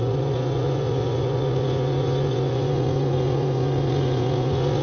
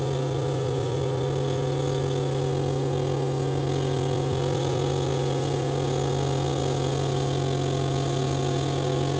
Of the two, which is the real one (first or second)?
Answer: second